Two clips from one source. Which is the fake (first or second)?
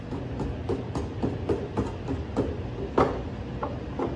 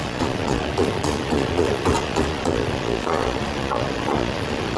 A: second